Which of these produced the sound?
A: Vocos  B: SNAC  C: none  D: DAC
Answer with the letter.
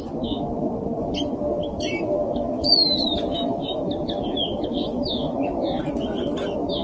C